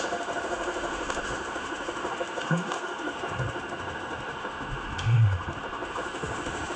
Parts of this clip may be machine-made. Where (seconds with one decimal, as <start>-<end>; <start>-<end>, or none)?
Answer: 0.0-6.8